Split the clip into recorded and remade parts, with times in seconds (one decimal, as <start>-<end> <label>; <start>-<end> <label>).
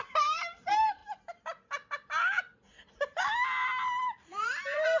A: 0.0-1.0 remade; 1.0-4.0 recorded; 4.0-5.0 remade